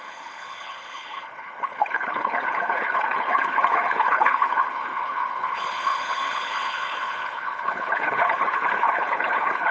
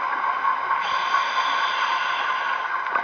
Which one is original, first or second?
second